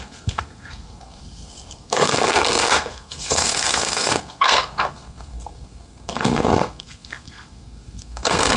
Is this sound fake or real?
fake